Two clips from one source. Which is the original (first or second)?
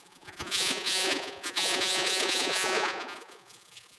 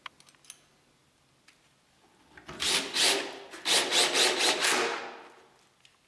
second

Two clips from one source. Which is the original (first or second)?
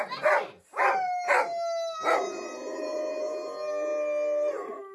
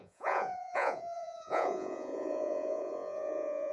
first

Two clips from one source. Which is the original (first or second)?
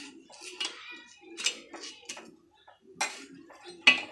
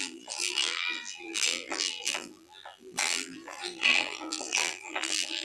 first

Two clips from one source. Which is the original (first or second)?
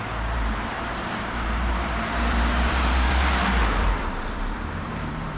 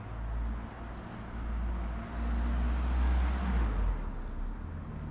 second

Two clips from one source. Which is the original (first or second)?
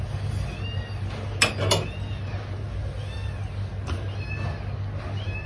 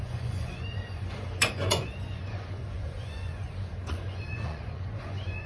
first